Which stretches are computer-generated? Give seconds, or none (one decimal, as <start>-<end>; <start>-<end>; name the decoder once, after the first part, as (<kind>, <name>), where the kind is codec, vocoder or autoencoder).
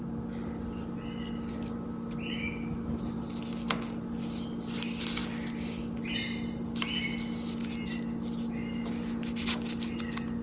none